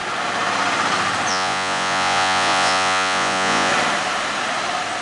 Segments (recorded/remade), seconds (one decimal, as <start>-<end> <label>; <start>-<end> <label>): 0.0-1.3 recorded; 1.3-3.7 remade; 3.7-5.0 recorded